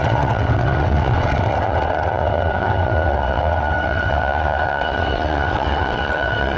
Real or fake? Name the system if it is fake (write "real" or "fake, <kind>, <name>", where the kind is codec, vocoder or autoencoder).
fake, vocoder, WaveNeXt